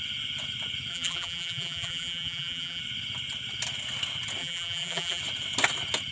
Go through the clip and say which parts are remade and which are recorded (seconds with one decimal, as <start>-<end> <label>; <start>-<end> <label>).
0.0-0.9 recorded; 0.9-2.8 remade; 2.8-4.4 recorded; 4.4-5.2 remade; 5.2-6.1 recorded